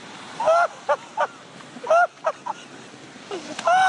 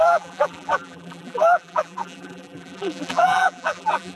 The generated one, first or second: second